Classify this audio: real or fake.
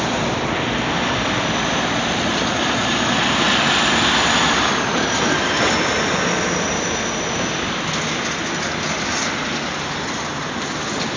real